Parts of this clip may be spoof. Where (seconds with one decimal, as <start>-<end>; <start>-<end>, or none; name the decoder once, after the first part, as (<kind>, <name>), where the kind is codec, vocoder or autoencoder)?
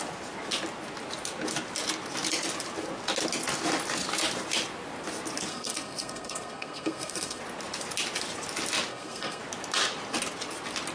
5.5-7.4 (codec, SNAC); 8.9-9.4